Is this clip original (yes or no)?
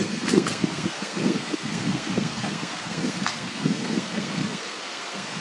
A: no